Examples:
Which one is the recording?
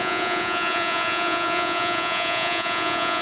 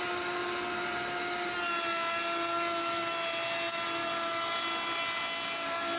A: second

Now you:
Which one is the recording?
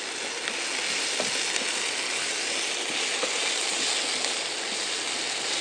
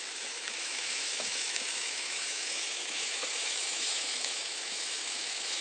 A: first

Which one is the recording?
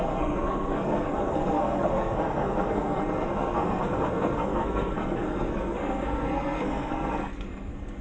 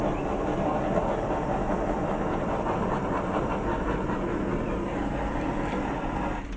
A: second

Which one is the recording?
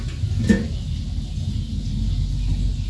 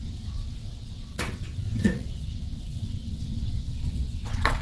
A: first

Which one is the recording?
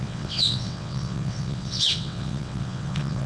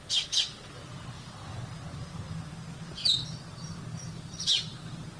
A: second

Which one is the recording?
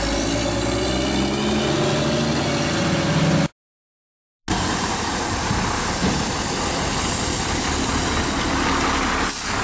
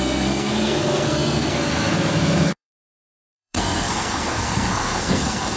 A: first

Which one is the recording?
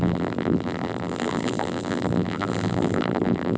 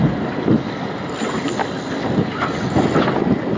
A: second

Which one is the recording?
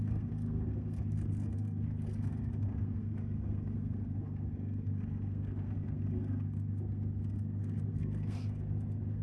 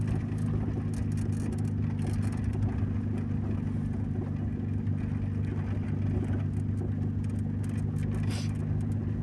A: second